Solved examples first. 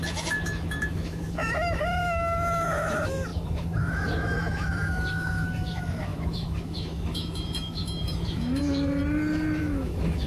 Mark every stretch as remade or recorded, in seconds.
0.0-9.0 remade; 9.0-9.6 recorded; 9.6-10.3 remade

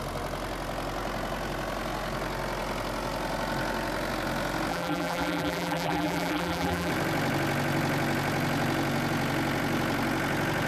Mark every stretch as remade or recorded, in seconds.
0.0-4.7 recorded; 4.7-6.9 remade; 6.9-10.7 recorded

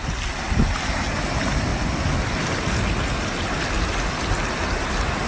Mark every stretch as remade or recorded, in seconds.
0.0-5.3 recorded